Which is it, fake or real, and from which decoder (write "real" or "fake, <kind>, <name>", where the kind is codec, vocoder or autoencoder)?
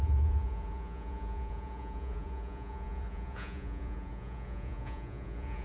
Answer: fake, vocoder, Vocos